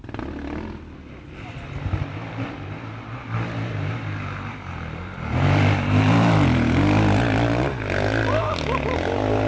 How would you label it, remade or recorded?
recorded